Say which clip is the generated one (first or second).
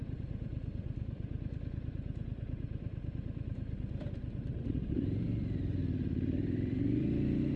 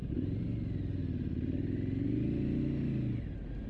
first